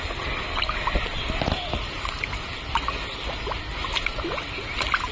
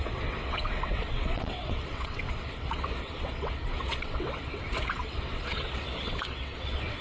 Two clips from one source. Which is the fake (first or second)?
second